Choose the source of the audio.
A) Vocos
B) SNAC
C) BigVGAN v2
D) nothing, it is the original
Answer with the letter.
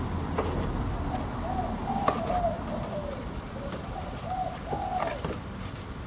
D